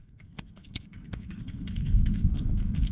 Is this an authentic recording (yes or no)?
no